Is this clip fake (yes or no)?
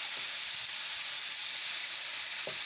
yes